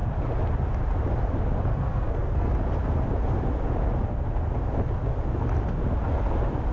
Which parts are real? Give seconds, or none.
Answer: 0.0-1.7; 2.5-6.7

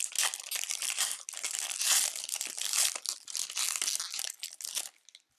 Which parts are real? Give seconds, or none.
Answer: 0.0-5.4